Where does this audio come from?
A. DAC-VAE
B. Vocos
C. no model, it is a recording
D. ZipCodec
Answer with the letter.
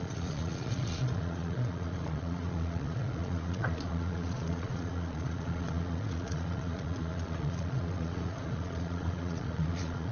B